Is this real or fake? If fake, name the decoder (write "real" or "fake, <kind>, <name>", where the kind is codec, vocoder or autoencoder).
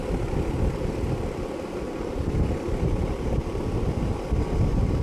real